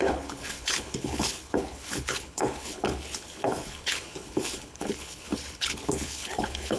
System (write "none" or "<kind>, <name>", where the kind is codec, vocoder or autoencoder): codec, HILCodec